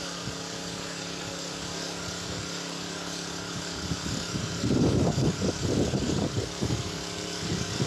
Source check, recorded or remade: remade